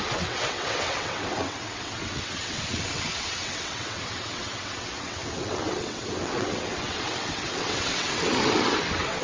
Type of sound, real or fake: fake